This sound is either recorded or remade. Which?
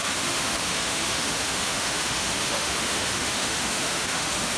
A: remade